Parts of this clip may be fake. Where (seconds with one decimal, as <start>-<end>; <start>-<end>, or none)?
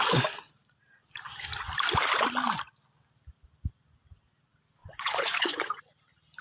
4.8-5.8